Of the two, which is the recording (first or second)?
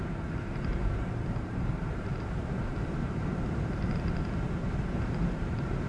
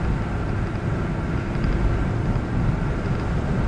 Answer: second